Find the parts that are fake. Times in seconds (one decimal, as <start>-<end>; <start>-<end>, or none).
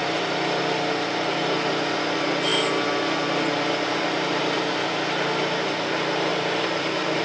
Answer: 0.0-0.6; 6.3-7.2